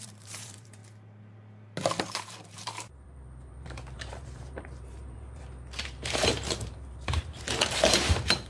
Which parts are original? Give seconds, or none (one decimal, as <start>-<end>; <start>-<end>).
0.8-2.0